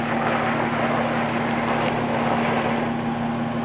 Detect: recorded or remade recorded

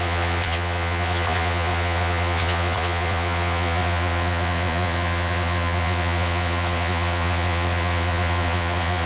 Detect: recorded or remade remade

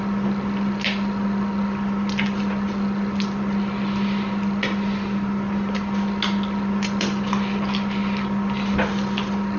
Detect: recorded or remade recorded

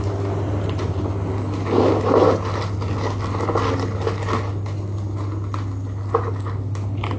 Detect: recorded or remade recorded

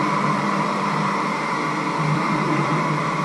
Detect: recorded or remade remade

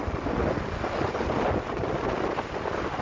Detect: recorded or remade recorded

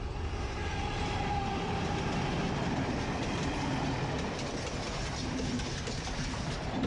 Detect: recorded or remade recorded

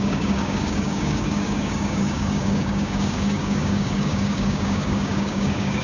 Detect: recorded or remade remade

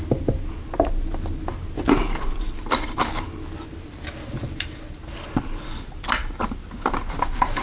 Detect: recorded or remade recorded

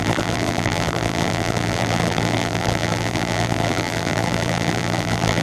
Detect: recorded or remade remade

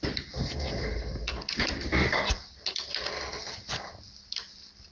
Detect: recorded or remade recorded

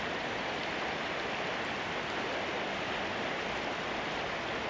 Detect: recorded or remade remade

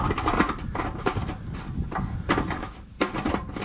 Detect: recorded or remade recorded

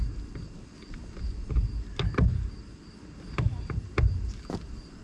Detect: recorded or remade recorded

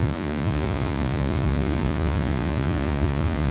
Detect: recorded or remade remade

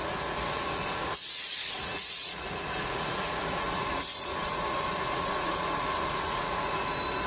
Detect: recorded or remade remade